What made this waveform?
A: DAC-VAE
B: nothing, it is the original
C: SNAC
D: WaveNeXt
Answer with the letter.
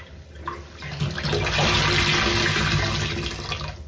B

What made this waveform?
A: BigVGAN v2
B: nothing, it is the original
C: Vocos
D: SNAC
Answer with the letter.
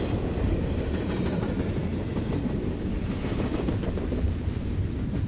A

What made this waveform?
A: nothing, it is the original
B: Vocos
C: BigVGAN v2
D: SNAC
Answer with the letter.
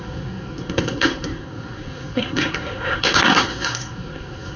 D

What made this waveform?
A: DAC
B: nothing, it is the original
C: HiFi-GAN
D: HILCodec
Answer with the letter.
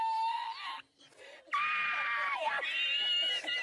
B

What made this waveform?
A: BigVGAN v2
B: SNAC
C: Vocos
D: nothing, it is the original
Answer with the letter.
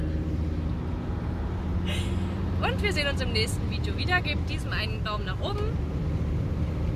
D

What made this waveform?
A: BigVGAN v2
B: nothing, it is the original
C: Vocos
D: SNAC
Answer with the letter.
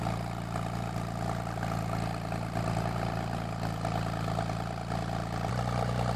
B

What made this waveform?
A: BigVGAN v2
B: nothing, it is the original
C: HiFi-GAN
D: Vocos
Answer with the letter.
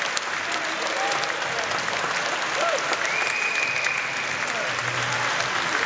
B